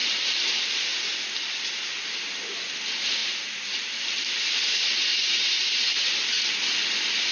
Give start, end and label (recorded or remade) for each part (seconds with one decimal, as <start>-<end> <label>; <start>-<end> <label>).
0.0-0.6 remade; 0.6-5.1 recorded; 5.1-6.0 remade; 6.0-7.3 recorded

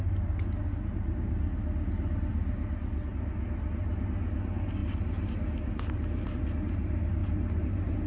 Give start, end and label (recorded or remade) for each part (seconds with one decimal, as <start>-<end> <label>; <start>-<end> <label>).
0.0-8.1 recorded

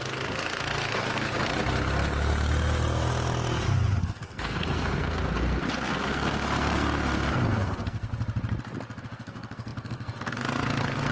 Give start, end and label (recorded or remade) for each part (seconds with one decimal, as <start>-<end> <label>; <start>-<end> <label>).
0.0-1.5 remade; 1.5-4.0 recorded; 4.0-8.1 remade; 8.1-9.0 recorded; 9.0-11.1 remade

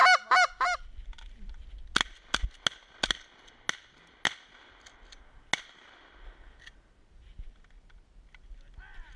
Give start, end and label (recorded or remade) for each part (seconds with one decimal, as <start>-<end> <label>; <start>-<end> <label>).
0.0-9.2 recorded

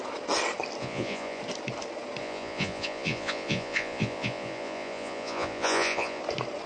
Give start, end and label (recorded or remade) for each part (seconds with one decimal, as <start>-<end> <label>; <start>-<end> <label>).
0.0-0.8 recorded; 0.8-1.4 remade; 1.4-2.2 recorded; 2.2-6.2 remade; 6.2-6.7 recorded